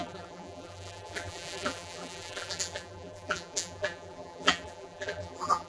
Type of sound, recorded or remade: remade